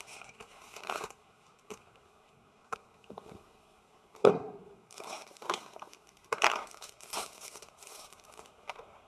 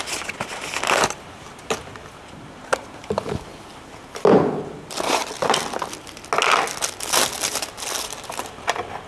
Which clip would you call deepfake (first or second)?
first